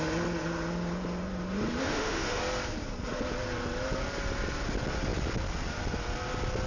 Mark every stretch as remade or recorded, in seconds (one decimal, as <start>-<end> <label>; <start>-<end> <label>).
0.0-1.8 recorded; 1.8-2.4 remade; 2.4-6.7 recorded